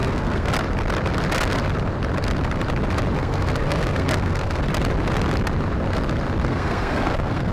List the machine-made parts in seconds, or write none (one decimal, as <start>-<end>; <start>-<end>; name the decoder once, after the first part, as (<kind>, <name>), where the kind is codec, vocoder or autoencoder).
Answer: 0.0-0.5 (codec, SNAC); 3.2-4.6; 6.4-7.5